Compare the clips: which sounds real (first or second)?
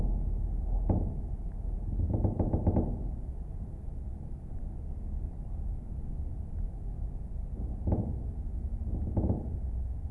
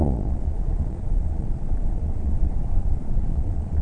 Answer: first